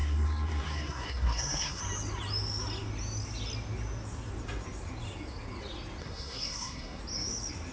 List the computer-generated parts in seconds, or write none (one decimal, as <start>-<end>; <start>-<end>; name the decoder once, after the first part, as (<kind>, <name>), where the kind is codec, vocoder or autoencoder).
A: 0.0-1.8 (codec, SNAC); 6.0-7.0